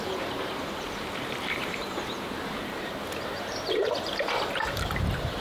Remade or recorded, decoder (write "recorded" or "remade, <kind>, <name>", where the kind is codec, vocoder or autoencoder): remade, vocoder, BigVGAN v2